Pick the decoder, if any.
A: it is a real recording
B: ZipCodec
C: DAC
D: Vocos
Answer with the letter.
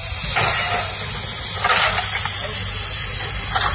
A